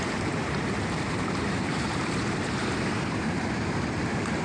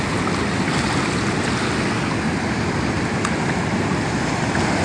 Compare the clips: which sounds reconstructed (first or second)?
first